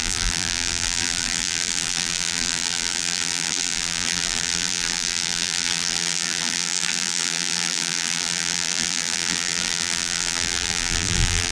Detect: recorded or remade remade